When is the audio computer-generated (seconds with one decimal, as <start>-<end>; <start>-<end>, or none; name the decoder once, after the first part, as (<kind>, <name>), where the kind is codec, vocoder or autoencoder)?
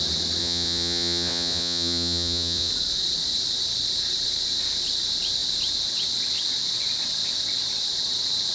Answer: 0.4-2.7 (vocoder, Vocos)